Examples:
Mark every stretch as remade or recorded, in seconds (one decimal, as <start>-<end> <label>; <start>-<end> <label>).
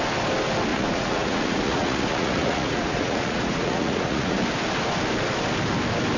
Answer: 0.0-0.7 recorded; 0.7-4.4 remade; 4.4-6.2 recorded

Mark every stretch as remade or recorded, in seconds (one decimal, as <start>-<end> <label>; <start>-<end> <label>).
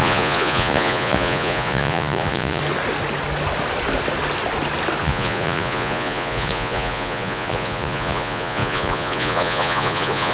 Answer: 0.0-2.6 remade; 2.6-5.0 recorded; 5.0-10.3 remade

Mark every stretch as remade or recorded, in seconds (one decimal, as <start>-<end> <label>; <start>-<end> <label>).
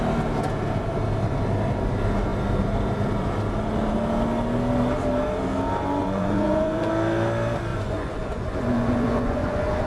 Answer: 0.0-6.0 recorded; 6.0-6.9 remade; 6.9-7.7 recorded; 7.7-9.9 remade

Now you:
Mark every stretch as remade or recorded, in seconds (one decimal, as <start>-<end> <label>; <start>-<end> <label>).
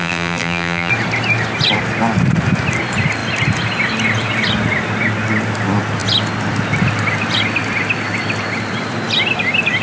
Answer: 0.0-0.9 remade; 0.9-9.8 recorded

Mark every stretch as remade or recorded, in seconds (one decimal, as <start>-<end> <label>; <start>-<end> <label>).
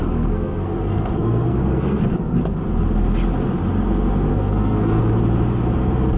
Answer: 0.0-2.0 remade; 2.0-4.3 recorded; 4.3-5.0 remade; 5.0-6.2 recorded